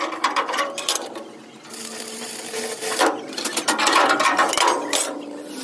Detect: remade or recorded remade